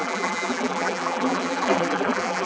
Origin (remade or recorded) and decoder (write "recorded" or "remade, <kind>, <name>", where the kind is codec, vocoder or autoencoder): remade, vocoder, BigVGAN v2